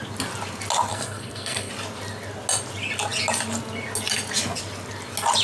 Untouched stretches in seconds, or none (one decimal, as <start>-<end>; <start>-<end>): 0.0-0.9; 1.7-5.4